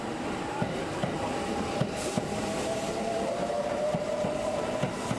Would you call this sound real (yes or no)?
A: no